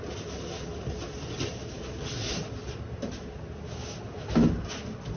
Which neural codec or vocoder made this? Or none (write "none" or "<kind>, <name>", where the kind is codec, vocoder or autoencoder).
none